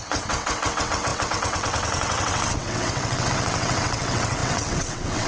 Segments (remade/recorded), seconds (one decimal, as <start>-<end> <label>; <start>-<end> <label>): 0.0-5.3 remade